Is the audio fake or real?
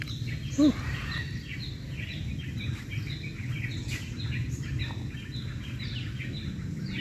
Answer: real